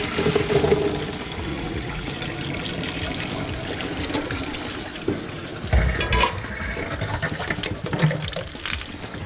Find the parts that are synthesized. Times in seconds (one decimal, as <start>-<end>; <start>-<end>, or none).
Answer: 1.5-2.1